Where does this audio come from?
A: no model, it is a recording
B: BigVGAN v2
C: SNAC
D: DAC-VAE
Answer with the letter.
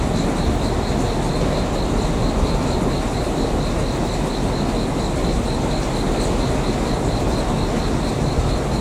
A